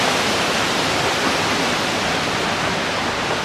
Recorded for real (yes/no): yes